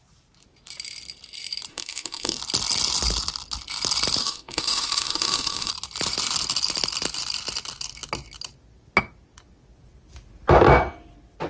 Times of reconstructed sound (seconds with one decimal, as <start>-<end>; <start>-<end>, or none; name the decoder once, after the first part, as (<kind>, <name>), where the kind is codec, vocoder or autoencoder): 1.7-2.4 (autoencoder, DAC-VAE); 4.2-5.7